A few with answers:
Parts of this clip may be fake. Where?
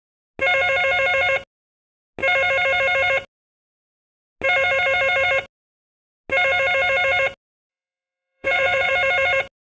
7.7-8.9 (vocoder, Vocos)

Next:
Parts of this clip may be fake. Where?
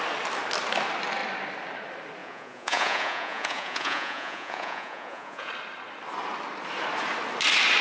2.2-5.5 (vocoder, Vocos)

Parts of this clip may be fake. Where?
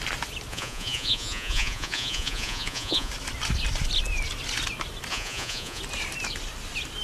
0.5-3.1 (vocoder, Vocos); 5.1-5.8